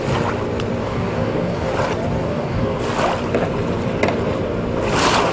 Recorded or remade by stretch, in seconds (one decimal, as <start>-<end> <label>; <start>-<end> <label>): 0.0-0.8 recorded; 0.8-1.7 remade; 1.7-2.2 recorded; 2.2-2.8 remade; 2.8-5.3 recorded